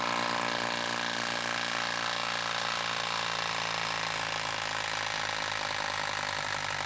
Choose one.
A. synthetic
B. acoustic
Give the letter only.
B